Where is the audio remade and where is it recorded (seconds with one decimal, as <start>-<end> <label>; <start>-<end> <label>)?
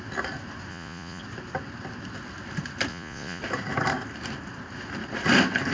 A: 0.0-0.7 recorded; 0.7-1.2 remade; 1.2-2.9 recorded; 2.9-3.4 remade; 3.4-5.7 recorded